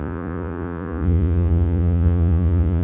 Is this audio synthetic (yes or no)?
yes